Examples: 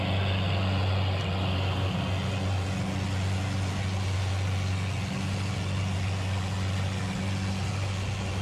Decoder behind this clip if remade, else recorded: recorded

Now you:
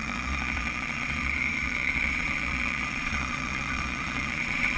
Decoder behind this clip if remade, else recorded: remade, vocoder, Vocos